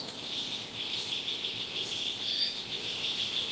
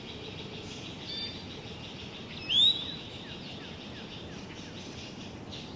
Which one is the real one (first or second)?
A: second